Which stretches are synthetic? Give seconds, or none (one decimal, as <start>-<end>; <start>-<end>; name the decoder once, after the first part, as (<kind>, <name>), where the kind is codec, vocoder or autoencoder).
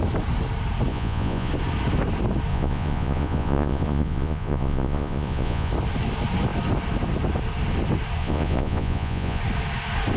0.9-1.5 (vocoder, Vocos); 2.5-5.7; 8.2-9.4